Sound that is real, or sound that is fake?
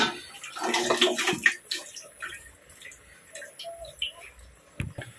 real